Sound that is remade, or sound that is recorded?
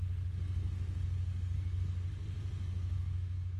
remade